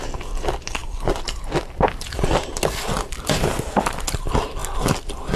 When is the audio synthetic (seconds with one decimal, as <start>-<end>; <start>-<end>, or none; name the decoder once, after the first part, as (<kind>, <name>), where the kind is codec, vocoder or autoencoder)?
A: none